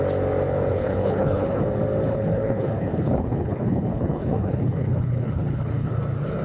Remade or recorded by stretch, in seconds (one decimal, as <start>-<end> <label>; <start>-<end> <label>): 0.0-0.7 recorded; 0.7-1.6 remade; 1.6-2.1 recorded; 2.1-5.9 remade; 5.9-6.4 recorded